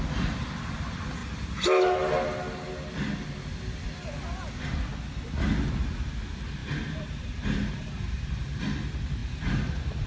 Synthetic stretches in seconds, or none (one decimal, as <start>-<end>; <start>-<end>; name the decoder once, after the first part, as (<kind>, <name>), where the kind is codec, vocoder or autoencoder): 6.6-8.6 (vocoder, BigVGAN v2); 9.2-10.1